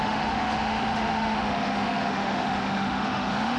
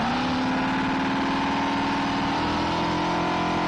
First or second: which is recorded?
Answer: second